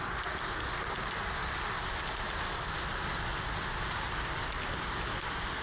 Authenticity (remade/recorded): recorded